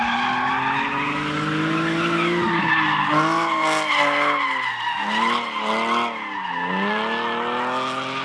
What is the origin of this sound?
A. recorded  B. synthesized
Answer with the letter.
A